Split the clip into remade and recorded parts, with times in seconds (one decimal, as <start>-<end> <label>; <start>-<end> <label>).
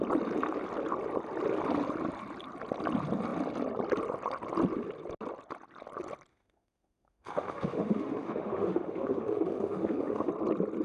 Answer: 0.0-6.3 recorded; 6.3-10.3 remade; 10.3-10.8 recorded